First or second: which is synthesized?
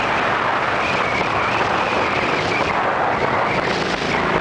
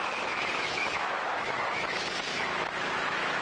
second